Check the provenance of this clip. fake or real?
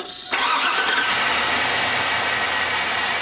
real